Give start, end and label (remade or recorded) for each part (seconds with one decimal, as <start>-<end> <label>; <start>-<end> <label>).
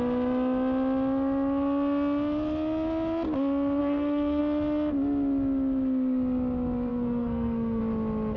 0.0-3.8 recorded; 3.8-4.4 remade; 4.4-6.9 recorded; 6.9-7.8 remade; 7.8-8.4 recorded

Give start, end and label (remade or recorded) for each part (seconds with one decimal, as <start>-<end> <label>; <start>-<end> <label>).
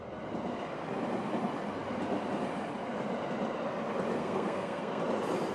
0.0-4.2 recorded; 4.2-5.0 remade; 5.0-5.5 recorded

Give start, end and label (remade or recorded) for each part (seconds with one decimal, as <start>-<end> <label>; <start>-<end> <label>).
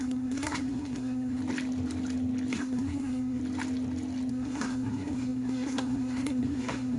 0.0-1.4 remade; 1.4-2.5 recorded; 2.5-3.4 remade; 3.4-4.3 recorded; 4.3-7.0 remade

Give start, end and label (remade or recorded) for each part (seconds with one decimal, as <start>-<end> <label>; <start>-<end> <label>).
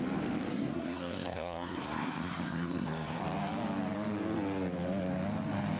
0.0-0.5 recorded; 0.5-3.2 remade; 3.2-5.8 recorded